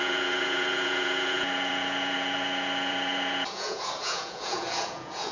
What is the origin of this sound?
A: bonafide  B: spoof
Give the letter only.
B